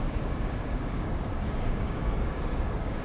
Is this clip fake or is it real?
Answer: fake